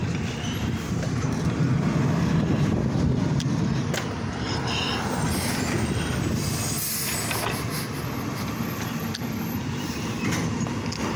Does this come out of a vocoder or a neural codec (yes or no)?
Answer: no